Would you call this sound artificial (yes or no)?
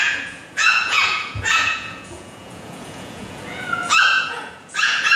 yes